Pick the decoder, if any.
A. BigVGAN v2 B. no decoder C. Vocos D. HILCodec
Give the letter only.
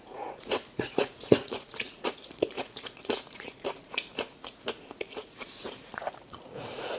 C